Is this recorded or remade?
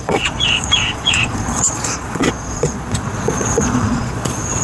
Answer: remade